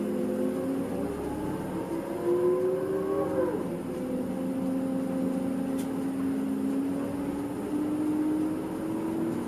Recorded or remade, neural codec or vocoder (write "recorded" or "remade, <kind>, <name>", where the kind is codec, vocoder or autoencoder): recorded